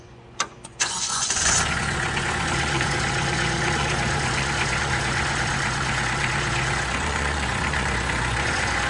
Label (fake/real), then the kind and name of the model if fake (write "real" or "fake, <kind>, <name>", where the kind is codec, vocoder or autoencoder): fake, vocoder, Vocos